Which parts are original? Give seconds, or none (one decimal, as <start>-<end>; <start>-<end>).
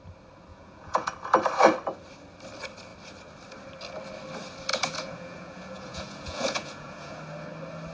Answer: 0.0-0.5; 1.1-4.7; 7.2-7.9